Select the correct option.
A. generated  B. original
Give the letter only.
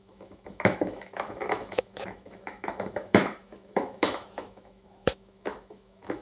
A